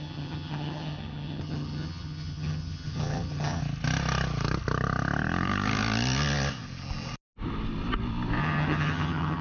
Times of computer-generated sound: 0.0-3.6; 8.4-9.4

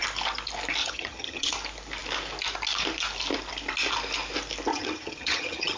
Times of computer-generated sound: 0.8-1.5; 4.7-5.8